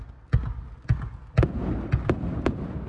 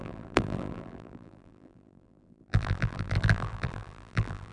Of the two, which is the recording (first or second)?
first